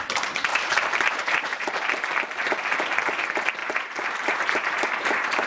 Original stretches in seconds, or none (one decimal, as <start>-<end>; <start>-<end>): 0.0-0.5; 1.7-3.6